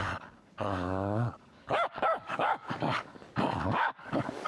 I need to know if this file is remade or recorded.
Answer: remade